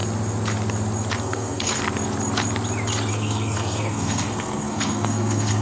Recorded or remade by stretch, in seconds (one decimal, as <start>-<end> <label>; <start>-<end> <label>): 0.0-1.2 recorded; 1.2-1.8 remade; 1.8-3.1 recorded; 3.1-5.6 remade